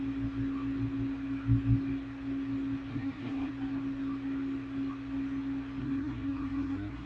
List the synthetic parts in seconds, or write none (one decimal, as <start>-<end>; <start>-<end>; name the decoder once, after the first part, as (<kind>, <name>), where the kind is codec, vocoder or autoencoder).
2.9-3.5 (codec, SNAC); 5.8-7.1